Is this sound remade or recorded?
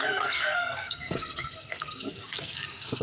remade